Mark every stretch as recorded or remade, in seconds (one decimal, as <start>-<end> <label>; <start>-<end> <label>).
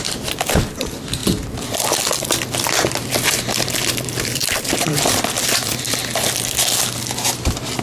0.0-6.0 remade; 6.0-7.8 recorded